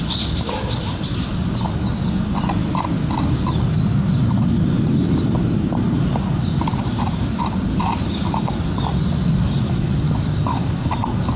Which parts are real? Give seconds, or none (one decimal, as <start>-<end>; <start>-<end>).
0.0-11.4